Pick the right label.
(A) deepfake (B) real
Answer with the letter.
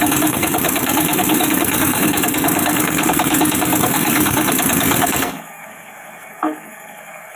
A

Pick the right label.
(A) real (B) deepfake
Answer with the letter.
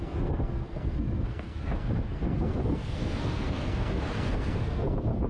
B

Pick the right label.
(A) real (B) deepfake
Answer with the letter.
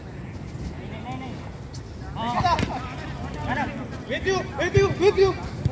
A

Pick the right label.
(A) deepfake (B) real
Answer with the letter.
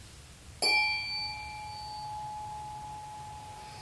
B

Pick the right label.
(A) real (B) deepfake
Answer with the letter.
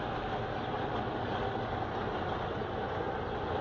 A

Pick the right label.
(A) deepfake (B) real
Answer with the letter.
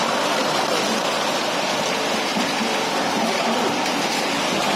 B